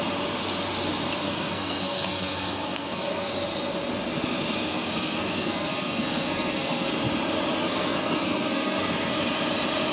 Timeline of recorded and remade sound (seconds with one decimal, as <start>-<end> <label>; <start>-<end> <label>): 0.0-1.2 recorded; 1.2-3.3 remade; 3.3-4.7 recorded; 4.7-6.9 remade; 6.9-7.6 recorded; 7.6-9.2 remade; 9.2-9.9 recorded